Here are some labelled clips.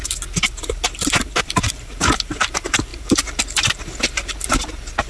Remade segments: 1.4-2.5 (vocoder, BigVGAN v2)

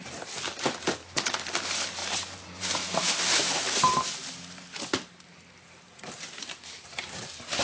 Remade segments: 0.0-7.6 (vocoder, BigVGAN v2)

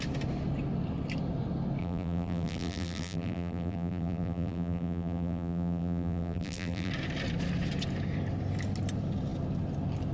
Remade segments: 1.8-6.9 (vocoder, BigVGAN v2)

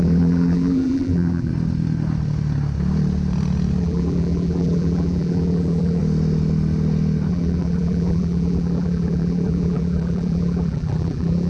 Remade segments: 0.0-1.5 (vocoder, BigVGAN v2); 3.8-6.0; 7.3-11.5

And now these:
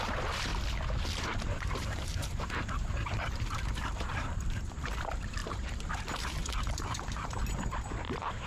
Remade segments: 0.0-0.5 (vocoder, BigVGAN v2); 1.0-8.5

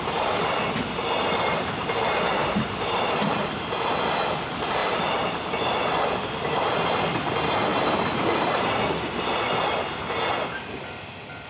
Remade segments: 2.4-3.9 (vocoder, BigVGAN v2); 4.8-5.5

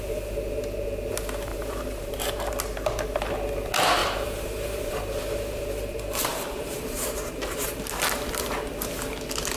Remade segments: 1.5-2.5 (vocoder, BigVGAN v2); 4.0-7.8